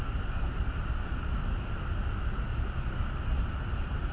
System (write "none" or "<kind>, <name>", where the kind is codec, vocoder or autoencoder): none